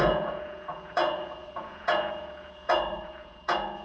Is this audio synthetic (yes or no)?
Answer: yes